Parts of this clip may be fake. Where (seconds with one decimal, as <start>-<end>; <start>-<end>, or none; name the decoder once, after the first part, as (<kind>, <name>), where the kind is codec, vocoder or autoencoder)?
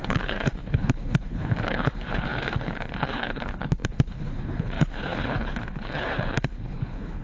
0.0-7.2 (codec, HILCodec)